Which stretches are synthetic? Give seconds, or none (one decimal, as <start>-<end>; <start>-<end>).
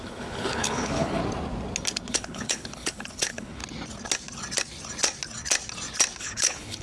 0.0-1.2; 2.1-3.6; 6.2-6.8